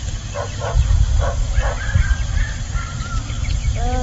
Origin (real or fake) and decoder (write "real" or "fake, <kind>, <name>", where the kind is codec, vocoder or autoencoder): real